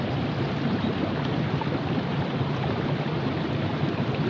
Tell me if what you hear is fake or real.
fake